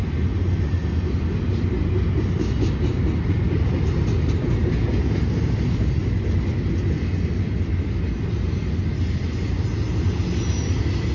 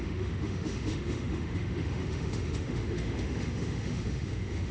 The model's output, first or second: second